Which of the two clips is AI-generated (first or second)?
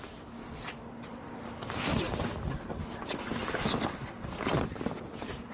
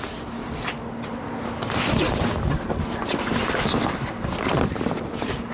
first